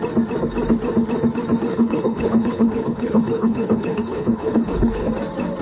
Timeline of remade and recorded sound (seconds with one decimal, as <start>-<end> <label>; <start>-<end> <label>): 0.0-1.7 recorded; 1.7-5.1 remade; 5.1-5.6 recorded